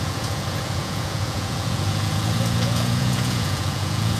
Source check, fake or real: fake